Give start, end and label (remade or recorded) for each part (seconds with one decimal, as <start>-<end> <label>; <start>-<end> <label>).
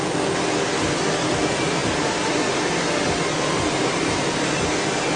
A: 0.0-5.2 recorded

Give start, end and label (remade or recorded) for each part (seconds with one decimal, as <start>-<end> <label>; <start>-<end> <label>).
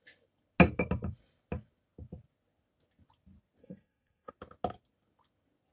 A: 0.0-3.6 recorded; 3.6-4.3 remade; 4.3-5.7 recorded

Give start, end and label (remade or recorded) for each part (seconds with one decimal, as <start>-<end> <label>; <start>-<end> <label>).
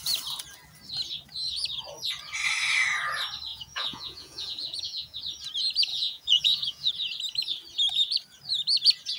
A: 0.0-3.5 recorded; 3.5-5.2 remade; 5.2-5.9 recorded; 5.9-6.9 remade; 6.9-9.2 recorded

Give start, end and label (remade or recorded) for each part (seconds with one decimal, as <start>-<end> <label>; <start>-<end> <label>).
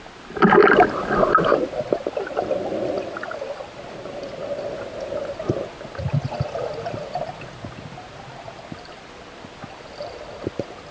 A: 0.0-10.9 recorded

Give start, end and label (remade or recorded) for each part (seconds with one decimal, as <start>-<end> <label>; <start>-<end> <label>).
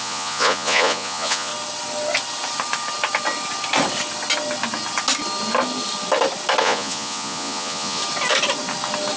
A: 0.0-1.5 remade; 1.5-6.6 recorded; 6.6-8.0 remade; 8.0-9.2 recorded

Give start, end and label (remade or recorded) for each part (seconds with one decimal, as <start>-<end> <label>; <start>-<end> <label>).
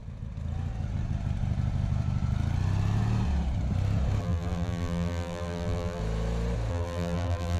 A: 0.0-4.2 recorded; 4.2-6.0 remade; 6.0-6.7 recorded; 6.7-7.6 remade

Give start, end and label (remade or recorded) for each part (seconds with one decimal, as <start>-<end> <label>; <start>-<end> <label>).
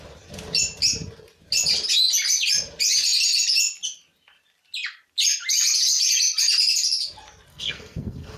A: 0.0-7.5 recorded; 7.5-8.4 remade